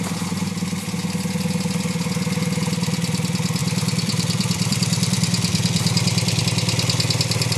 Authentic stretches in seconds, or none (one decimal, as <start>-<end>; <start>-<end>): 0.0-3.6; 6.4-7.6